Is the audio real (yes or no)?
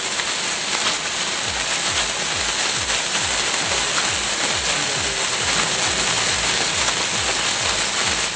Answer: yes